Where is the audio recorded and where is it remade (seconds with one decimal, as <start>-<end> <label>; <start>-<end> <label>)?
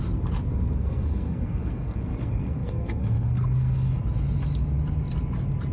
0.0-0.5 recorded; 0.5-3.9 remade; 3.9-5.7 recorded